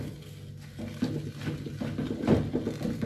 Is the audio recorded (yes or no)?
yes